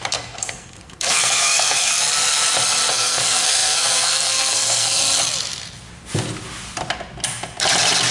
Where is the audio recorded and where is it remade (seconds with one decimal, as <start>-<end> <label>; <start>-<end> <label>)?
0.0-1.9 remade; 1.9-2.9 recorded; 2.9-5.0 remade; 5.0-8.1 recorded